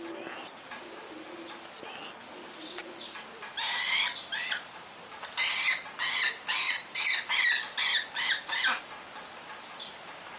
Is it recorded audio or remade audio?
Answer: recorded